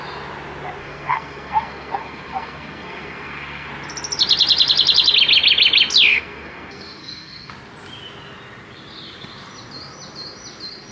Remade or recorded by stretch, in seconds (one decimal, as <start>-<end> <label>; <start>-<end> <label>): 0.0-0.8 recorded; 0.8-3.7 remade; 3.7-6.1 recorded; 6.1-7.5 remade; 7.5-10.9 recorded